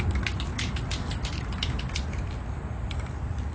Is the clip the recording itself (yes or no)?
yes